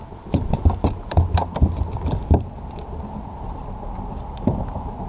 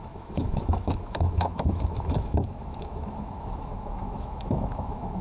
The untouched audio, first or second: first